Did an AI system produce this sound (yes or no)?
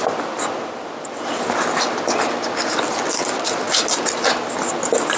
no